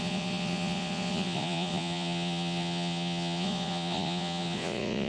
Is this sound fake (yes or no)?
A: yes